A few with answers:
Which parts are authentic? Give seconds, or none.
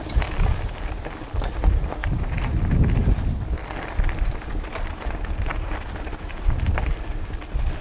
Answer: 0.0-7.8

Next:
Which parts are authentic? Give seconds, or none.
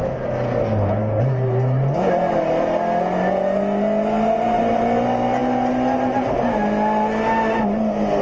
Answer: 0.0-8.2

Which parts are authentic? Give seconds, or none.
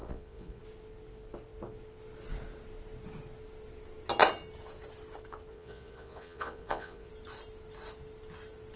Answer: 0.6-5.5; 7.1-8.8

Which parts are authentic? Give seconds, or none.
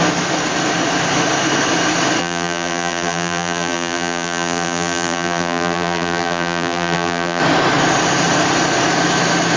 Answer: 0.0-2.2; 7.4-9.6